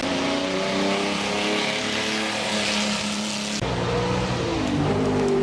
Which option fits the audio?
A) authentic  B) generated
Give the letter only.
A